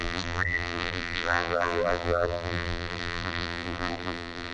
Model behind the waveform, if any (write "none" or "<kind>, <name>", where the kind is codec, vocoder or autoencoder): vocoder, BigVGAN v2